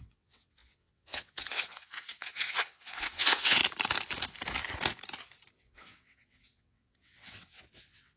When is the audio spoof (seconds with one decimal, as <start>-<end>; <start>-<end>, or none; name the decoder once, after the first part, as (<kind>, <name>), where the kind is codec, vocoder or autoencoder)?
0.0-3.6 (vocoder, WaveNeXt); 5.5-8.2